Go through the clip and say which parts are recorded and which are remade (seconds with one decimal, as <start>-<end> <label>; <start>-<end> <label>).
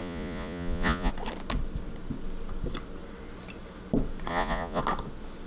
0.0-1.1 remade; 1.1-4.3 recorded; 4.3-4.8 remade; 4.8-5.5 recorded